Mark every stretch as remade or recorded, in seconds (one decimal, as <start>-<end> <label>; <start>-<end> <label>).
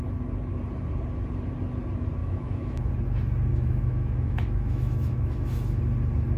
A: 0.0-2.2 recorded; 2.2-2.9 remade; 2.9-3.5 recorded; 3.5-5.8 remade; 5.8-6.4 recorded